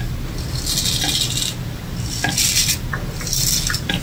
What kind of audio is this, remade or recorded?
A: recorded